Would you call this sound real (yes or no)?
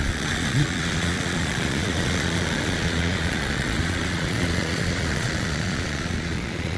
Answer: no